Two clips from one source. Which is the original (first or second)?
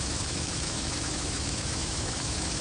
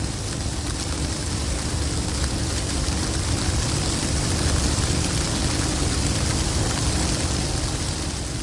second